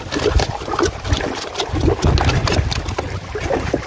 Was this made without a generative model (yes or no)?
yes